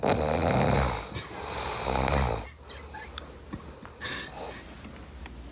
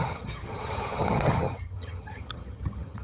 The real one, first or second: first